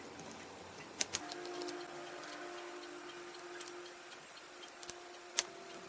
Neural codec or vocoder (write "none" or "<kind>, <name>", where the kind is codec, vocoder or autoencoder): none